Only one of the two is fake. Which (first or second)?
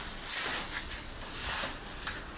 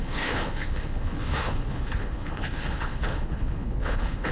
second